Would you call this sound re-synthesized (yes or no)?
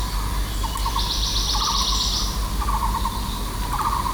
no